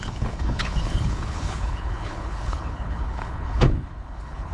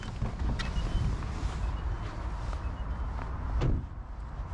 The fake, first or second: first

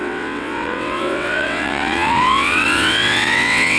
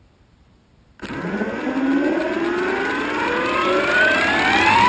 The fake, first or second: first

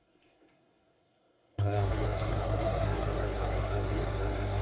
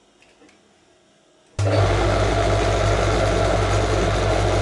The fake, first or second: first